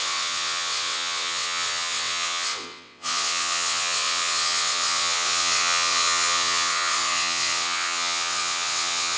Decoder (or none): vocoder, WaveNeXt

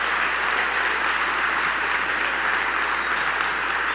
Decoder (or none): none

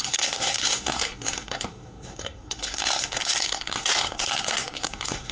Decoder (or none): codec, SNAC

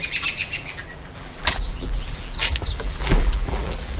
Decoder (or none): vocoder, BigVGAN v2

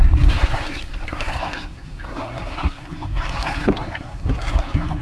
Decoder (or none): codec, SNAC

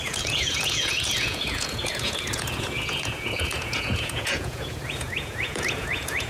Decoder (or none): vocoder, Vocos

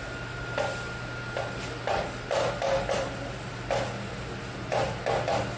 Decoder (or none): none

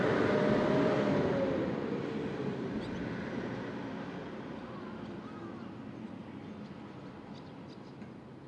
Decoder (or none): none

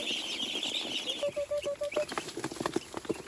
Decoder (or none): none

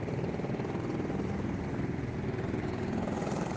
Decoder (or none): none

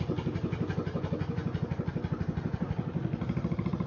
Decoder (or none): none